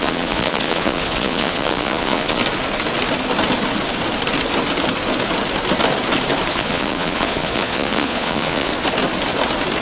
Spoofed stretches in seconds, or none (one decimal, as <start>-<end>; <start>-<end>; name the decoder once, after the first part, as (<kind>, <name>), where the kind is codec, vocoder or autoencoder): 0.0-2.4 (vocoder, Vocos); 6.5-8.7